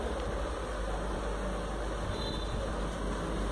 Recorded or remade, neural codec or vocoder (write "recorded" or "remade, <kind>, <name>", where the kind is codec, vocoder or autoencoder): recorded